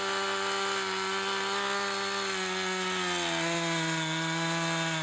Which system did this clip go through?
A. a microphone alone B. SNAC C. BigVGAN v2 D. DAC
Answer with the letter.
A